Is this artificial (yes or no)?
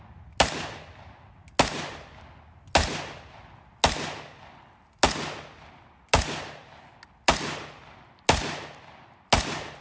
no